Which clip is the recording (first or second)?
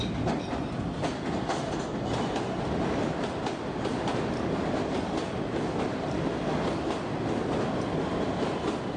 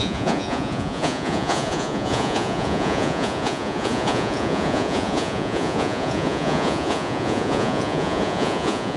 first